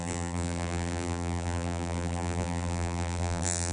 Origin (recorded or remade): remade